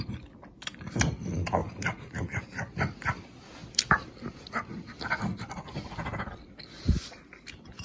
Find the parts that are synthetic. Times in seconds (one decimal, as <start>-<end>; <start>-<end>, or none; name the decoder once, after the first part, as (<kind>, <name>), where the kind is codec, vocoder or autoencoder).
none